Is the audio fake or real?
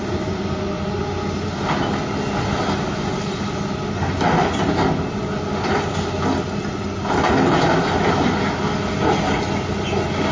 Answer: real